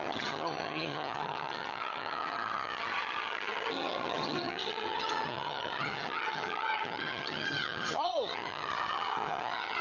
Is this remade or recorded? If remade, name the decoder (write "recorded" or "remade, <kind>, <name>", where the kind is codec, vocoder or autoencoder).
remade, vocoder, HiFi-GAN